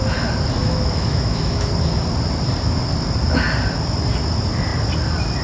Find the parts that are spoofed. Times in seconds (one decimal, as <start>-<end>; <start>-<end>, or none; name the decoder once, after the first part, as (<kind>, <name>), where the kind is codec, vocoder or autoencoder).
0.6-1.7 (autoencoder, DAC-VAE)